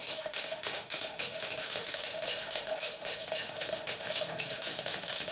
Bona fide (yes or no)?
no